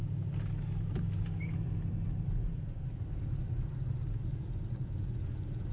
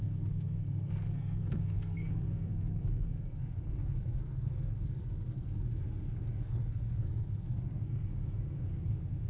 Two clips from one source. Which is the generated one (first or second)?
second